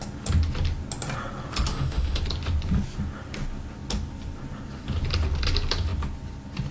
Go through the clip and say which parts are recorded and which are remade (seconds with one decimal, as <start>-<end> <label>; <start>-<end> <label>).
0.0-1.7 recorded; 1.7-2.2 remade; 2.2-6.7 recorded